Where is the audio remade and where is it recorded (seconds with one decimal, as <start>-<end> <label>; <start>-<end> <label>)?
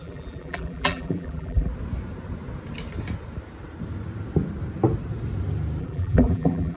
0.0-1.7 remade; 1.7-5.8 recorded; 5.8-6.8 remade